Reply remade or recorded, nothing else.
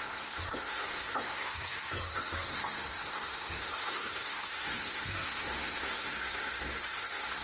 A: remade